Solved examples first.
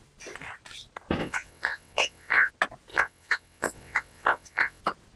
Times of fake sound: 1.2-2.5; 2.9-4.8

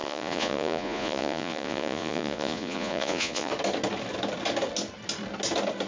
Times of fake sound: 0.0-3.5

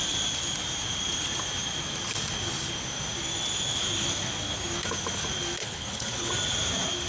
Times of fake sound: 5.6-6.3

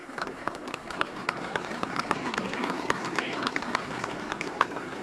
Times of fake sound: 0.0-5.0

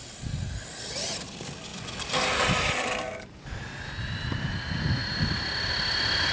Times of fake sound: none

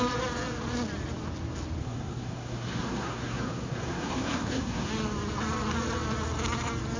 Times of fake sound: 1.8-4.9

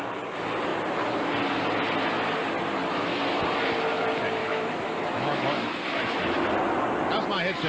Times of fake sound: 4.4-6.4

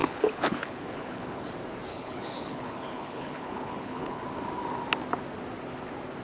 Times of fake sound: 0.0-1.5; 1.9-4.2